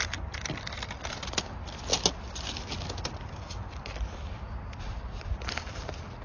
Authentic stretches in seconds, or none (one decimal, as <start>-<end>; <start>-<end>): 0.0-6.2